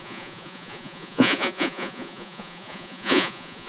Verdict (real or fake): fake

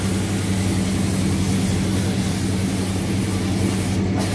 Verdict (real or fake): real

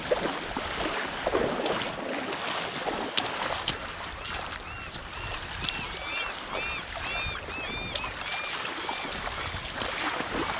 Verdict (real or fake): real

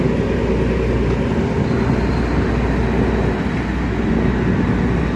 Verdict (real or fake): real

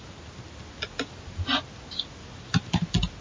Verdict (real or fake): real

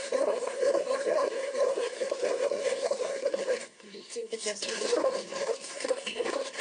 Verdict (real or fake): fake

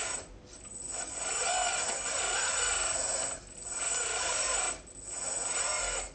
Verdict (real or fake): real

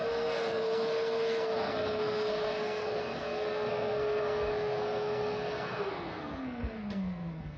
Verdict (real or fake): fake